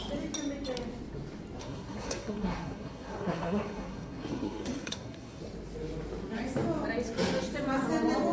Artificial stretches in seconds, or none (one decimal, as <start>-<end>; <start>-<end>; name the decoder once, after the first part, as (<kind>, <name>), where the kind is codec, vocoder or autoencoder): 1.6-5.4 (codec, SNAC)

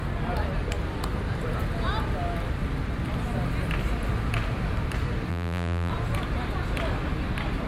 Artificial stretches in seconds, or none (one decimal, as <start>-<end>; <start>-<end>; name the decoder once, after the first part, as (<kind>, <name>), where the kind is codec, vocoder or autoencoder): 5.3-5.9 (vocoder, BigVGAN v2)

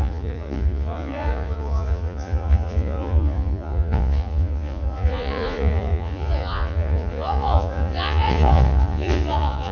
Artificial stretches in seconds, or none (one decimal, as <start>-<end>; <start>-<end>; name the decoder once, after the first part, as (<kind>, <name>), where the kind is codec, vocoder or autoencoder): 0.0-9.7 (vocoder, Vocos)

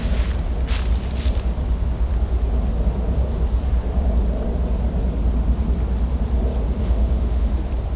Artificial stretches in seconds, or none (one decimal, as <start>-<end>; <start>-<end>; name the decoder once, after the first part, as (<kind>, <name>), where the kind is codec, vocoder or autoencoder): 6.8-7.5 (autoencoder, DAC-VAE)

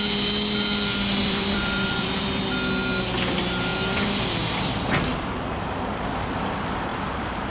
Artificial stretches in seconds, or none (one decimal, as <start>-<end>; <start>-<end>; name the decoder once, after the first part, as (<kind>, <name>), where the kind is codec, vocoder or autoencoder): 1.2-2.4 (vocoder, BigVGAN v2); 3.7-6.3

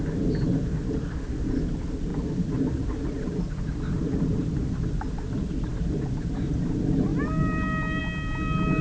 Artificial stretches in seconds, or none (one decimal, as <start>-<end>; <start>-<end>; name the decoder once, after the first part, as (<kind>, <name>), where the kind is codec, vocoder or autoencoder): none